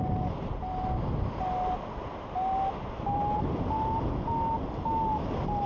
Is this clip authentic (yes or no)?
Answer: yes